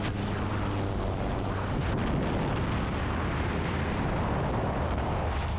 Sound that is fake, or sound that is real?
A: real